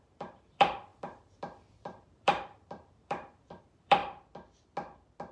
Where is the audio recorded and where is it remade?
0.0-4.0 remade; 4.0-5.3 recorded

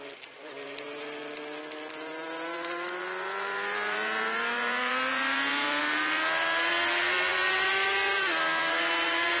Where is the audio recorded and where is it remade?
0.0-1.2 remade; 1.2-1.9 recorded; 1.9-8.1 remade; 8.1-8.7 recorded; 8.7-9.4 remade

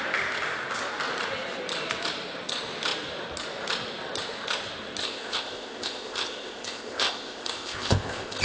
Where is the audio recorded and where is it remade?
0.0-5.0 recorded; 5.0-8.4 remade

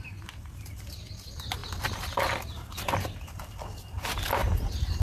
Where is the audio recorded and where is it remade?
0.0-4.4 recorded; 4.4-5.0 remade

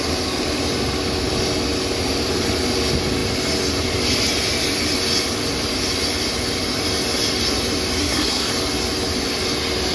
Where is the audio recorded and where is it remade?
0.0-8.0 recorded; 8.0-8.5 remade; 8.5-9.9 recorded